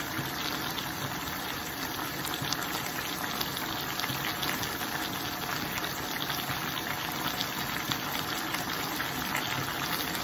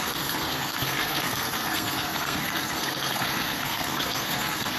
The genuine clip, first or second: first